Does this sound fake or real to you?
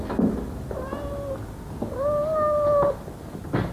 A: real